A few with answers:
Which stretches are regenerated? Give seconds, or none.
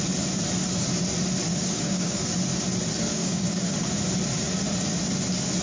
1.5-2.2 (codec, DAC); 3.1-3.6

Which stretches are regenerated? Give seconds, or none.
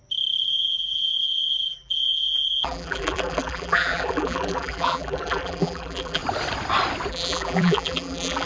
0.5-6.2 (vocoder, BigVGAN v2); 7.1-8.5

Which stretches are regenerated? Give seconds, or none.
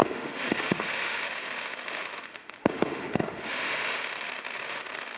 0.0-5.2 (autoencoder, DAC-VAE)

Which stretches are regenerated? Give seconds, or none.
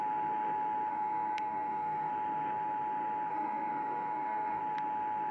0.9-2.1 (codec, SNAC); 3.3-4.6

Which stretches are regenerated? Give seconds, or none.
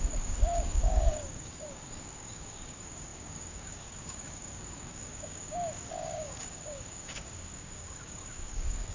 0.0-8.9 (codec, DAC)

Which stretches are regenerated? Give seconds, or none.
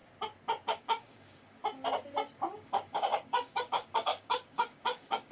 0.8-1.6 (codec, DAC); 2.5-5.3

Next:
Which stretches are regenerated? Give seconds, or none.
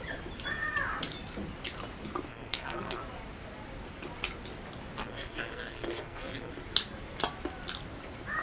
2.3-3.0 (codec, SNAC); 5.0-6.5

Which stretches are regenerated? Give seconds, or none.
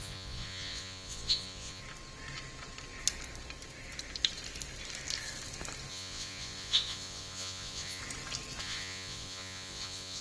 0.0-1.8 (vocoder, Vocos); 5.9-8.0; 8.6-10.2